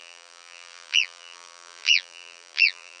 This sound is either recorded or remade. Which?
remade